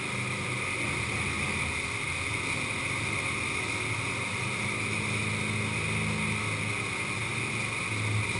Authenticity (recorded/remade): recorded